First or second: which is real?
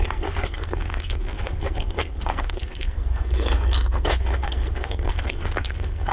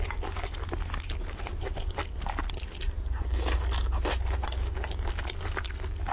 second